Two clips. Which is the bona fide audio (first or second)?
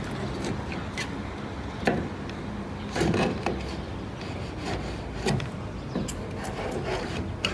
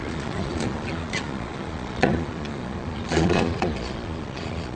first